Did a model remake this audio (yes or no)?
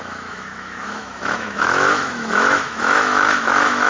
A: yes